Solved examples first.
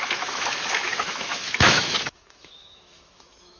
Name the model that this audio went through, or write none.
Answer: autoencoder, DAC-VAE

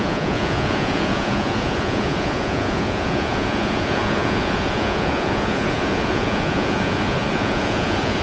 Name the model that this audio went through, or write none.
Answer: vocoder, Vocos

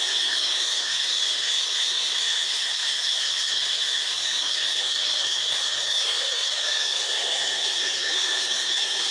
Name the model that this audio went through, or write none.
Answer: codec, SNAC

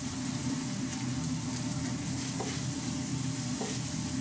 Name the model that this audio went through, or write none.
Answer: none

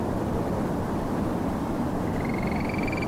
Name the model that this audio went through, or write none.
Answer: none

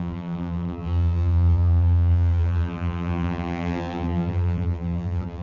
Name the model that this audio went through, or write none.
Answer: vocoder, BigVGAN v2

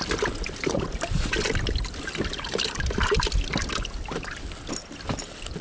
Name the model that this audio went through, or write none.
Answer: none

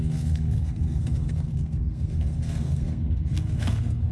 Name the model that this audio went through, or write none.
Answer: codec, SNAC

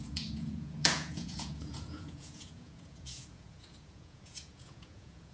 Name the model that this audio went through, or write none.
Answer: vocoder, Vocos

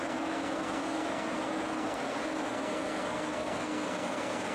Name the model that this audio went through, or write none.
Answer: codec, SNAC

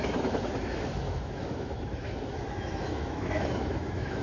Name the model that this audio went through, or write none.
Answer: autoencoder, DAC-VAE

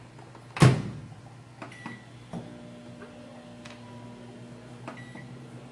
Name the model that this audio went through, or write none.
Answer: none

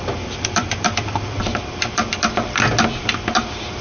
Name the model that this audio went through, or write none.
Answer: vocoder, BigVGAN v2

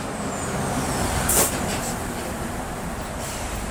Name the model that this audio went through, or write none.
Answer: vocoder, BigVGAN v2